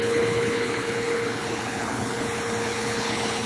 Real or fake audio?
fake